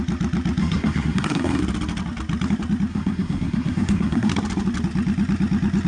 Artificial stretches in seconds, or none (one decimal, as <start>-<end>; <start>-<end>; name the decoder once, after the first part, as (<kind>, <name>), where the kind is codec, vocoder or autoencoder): 0.6-1.6 (codec, SNAC); 2.9-4.3